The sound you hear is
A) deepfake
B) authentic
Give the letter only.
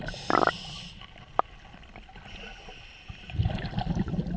B